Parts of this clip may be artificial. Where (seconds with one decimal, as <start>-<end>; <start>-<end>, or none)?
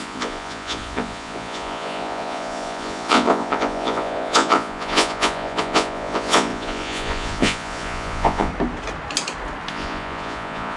0.0-8.5; 9.7-10.8